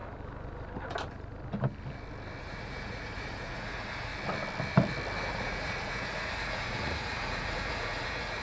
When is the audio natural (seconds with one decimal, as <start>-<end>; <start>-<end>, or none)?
0.0-2.4; 4.1-5.3